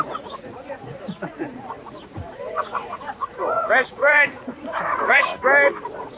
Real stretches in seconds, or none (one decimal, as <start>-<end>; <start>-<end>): 5.3-5.8